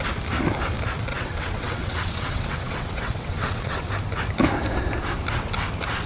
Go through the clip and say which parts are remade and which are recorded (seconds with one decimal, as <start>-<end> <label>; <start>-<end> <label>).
0.0-1.1 recorded; 1.1-3.9 remade; 3.9-6.1 recorded